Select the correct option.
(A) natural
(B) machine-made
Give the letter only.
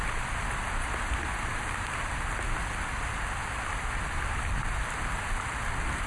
A